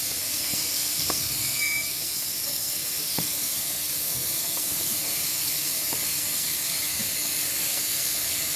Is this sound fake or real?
fake